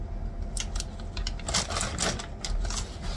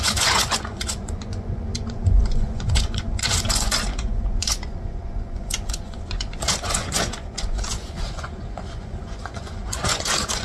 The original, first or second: first